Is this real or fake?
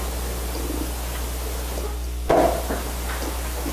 real